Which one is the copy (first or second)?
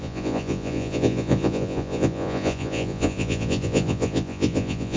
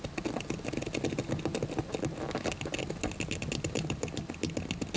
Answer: first